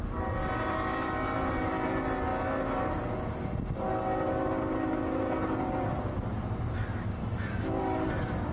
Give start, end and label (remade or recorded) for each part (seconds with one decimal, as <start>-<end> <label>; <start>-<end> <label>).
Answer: 0.0-7.2 recorded; 7.2-7.8 remade; 7.8-8.5 recorded